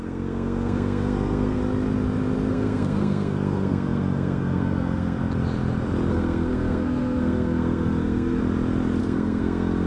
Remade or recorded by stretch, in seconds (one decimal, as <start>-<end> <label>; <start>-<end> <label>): 0.0-1.6 remade; 1.6-2.5 recorded; 2.5-5.2 remade; 5.2-6.1 recorded; 6.1-8.4 remade; 8.4-9.0 recorded; 9.0-9.9 remade